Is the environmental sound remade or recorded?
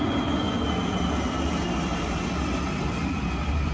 recorded